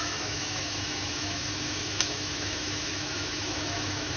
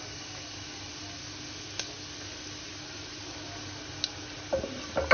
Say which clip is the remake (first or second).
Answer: first